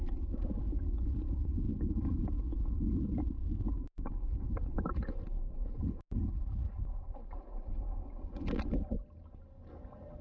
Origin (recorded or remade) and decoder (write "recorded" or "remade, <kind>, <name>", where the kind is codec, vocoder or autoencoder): recorded